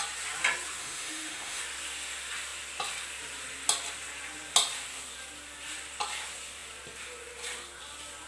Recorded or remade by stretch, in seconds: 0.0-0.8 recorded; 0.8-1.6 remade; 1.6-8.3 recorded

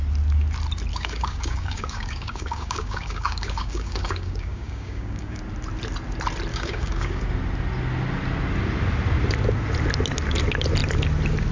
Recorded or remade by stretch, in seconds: 0.0-0.9 recorded; 0.9-5.4 remade; 5.4-6.5 recorded; 6.5-7.3 remade; 7.3-11.5 recorded

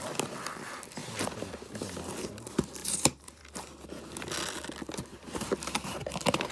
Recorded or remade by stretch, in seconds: 0.0-2.8 recorded; 2.8-3.4 remade; 3.4-6.5 recorded

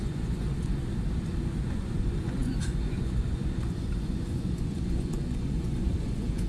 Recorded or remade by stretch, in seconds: 0.0-0.8 remade; 0.8-1.6 recorded; 1.6-6.5 remade